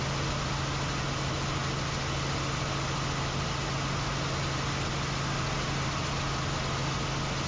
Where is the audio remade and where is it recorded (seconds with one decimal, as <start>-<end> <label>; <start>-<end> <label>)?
0.0-7.5 recorded